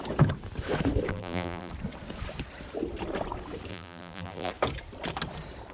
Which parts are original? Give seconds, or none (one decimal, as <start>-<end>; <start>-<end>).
0.0-1.1; 1.7-3.7; 4.5-5.7